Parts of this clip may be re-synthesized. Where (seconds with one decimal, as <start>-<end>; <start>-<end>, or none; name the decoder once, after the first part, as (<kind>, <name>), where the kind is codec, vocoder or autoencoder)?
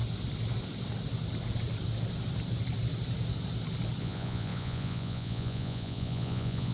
4.0-6.7 (vocoder, Vocos)